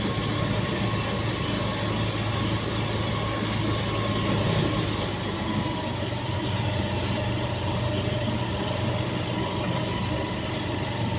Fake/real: real